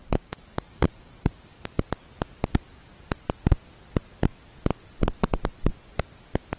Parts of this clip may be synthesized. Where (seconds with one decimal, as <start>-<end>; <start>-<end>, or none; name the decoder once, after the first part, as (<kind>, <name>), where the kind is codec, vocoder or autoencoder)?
0.0-1.7 (vocoder, BigVGAN v2)